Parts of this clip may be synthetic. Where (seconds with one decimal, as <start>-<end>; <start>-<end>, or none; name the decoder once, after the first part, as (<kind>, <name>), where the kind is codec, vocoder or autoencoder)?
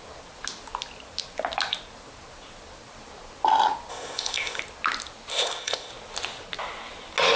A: 3.9-4.6 (codec, ZipCodec); 5.3-5.9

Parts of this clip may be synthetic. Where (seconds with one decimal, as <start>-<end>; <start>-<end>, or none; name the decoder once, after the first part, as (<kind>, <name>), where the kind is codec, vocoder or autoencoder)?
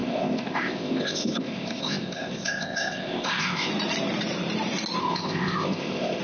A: 0.0-3.7 (codec, ZipCodec); 5.0-6.2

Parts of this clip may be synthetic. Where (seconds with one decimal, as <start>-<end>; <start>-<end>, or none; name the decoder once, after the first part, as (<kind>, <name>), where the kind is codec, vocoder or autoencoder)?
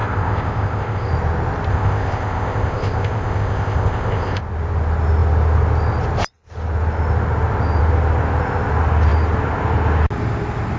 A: 0.0-1.1 (codec, ZipCodec); 1.7-4.4